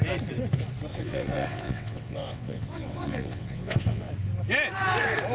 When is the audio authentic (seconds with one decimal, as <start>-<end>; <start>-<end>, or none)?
0.0-0.9; 4.1-5.3